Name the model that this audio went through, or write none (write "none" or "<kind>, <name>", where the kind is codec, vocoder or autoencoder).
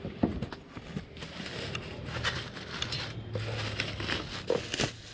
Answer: none